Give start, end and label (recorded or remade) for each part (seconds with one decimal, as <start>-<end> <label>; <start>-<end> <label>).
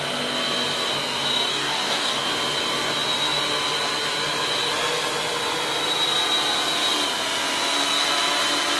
0.0-1.5 recorded; 1.5-2.3 remade; 2.3-8.8 recorded